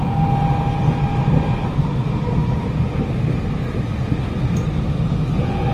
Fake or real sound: real